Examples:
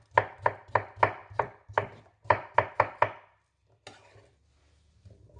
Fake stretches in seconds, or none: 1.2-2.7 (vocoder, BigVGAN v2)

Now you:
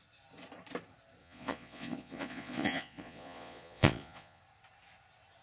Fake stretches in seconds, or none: 1.2-4.4 (vocoder, Vocos)